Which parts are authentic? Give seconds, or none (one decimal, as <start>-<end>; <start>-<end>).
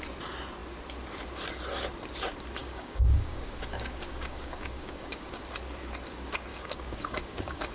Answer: 0.0-2.6; 5.4-6.5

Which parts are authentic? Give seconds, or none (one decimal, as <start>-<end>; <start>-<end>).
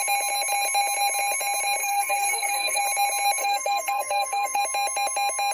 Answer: 0.0-1.8; 2.8-3.4; 4.6-5.5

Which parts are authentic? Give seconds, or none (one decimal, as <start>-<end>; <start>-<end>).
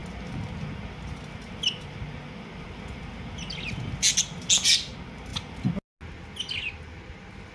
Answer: 0.0-7.5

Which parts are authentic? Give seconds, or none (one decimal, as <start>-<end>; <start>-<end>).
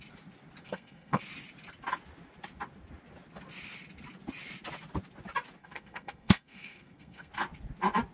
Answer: 0.0-0.6; 1.2-5.6; 7.3-8.1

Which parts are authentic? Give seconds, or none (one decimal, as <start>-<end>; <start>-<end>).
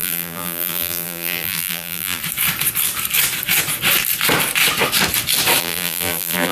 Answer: 2.2-5.6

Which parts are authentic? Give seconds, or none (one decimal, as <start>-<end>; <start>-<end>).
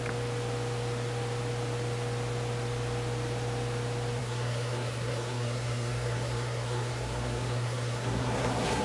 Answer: 0.0-4.2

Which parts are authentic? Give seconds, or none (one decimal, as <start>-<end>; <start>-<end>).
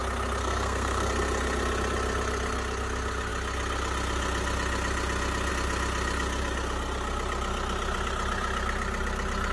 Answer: 0.0-0.4; 1.1-9.5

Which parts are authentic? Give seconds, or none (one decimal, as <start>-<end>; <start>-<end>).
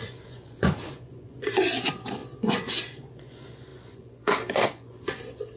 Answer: none